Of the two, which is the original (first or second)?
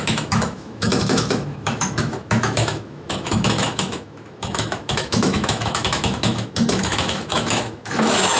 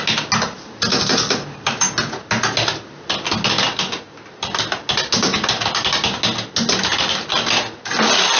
second